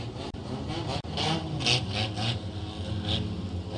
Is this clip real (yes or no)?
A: yes